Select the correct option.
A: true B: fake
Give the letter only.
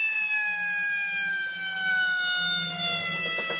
A